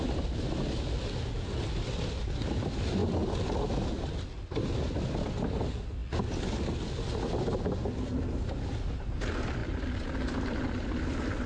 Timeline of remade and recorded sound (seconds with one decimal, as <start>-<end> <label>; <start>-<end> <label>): 0.0-9.6 recorded; 9.6-10.5 remade; 10.5-11.5 recorded